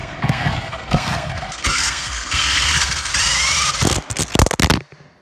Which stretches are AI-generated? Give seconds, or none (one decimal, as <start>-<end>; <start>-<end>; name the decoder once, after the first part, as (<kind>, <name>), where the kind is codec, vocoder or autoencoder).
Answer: 0.0-3.1 (codec, SNAC)